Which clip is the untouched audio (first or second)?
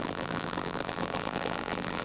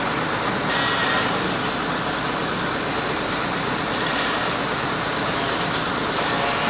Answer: second